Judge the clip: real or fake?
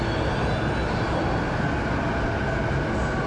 real